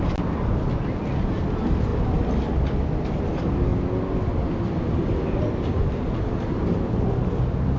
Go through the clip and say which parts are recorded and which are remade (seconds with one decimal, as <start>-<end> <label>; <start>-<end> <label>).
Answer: 0.0-7.8 recorded